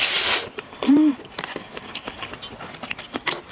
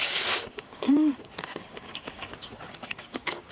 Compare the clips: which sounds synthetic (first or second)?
second